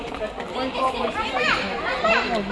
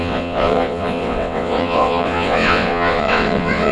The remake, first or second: second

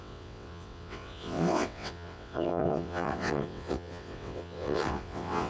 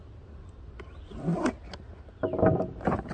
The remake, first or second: first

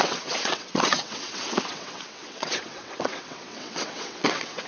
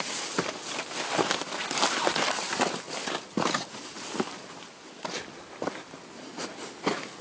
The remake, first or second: first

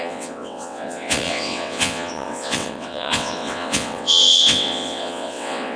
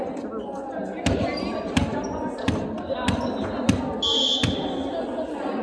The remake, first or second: first